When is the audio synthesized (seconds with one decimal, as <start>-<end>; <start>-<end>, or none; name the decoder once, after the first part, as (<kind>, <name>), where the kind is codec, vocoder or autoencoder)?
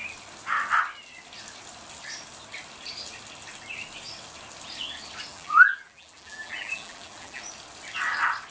5.3-7.4 (vocoder, BigVGAN v2)